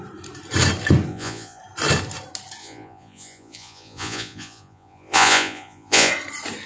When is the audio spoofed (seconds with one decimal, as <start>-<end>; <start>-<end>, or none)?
1.1-1.6; 2.6-6.1